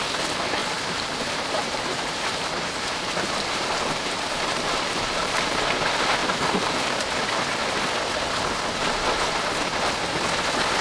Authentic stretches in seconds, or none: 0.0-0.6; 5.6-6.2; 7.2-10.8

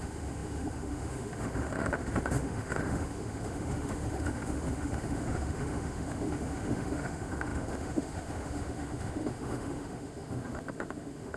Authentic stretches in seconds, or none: none

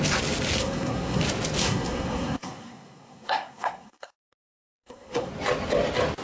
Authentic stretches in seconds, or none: 0.0-0.6; 1.2-1.6; 5.3-6.2

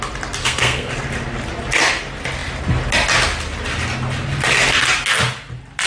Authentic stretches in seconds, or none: 0.0-0.4; 0.9-5.9

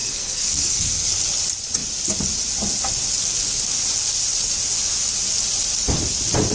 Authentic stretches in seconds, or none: 1.1-6.5

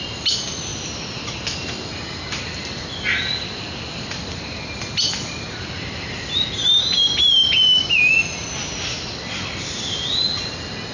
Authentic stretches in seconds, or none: 0.0-10.9